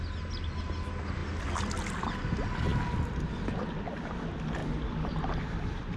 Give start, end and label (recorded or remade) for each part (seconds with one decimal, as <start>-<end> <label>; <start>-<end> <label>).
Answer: 0.0-6.0 recorded